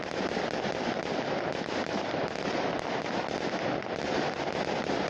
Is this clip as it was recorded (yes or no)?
yes